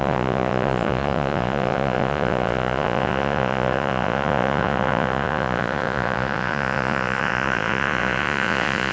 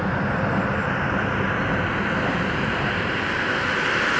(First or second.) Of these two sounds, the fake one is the first